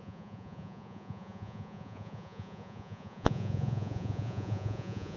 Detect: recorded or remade remade